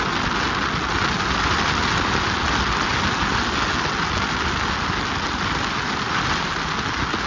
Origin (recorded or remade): recorded